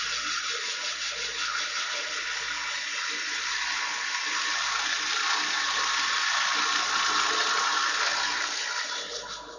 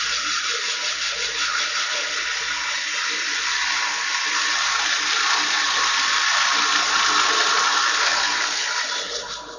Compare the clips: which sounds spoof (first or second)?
second